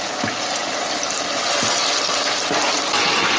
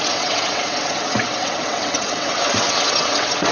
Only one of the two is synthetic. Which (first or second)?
second